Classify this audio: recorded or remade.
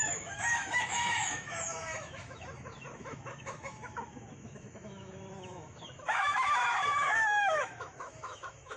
remade